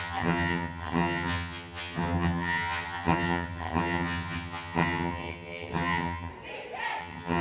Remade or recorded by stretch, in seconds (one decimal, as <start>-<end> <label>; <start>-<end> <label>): 0.0-6.3 remade; 6.3-7.0 recorded; 7.0-7.4 remade